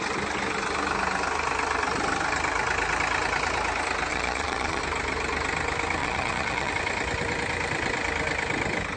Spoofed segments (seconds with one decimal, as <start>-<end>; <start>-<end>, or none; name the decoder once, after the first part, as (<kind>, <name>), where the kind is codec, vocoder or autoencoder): 4.1-4.8 (vocoder, Vocos); 6.0-6.7